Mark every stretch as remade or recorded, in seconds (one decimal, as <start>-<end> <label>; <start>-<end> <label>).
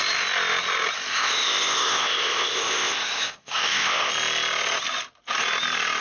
0.0-1.1 recorded; 1.1-4.1 remade; 4.1-6.0 recorded